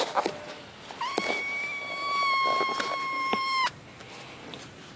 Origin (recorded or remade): recorded